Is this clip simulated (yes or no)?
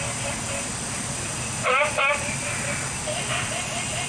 no